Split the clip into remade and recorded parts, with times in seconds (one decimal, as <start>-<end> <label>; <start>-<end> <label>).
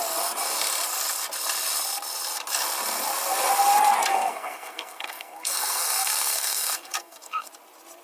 0.0-4.1 recorded; 4.1-7.5 remade; 7.5-8.0 recorded